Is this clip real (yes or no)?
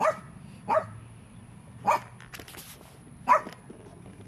no